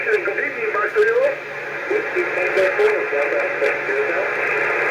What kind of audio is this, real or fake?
real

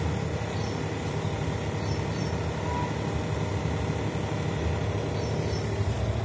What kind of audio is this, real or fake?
real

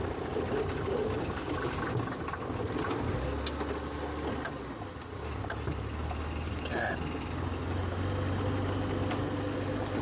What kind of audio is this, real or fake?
real